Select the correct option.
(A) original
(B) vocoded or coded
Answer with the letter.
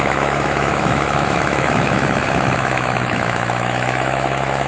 B